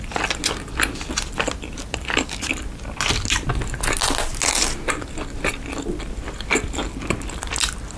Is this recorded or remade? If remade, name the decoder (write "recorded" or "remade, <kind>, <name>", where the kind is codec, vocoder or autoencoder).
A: recorded